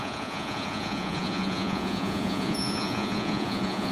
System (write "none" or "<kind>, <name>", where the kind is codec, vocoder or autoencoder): vocoder, Vocos